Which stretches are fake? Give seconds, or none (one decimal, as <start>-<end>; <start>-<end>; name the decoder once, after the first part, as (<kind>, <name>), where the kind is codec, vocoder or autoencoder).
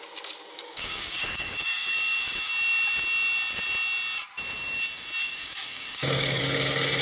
0.5-2.5 (codec, DAC); 5.2-6.4